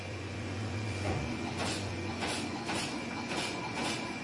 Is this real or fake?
fake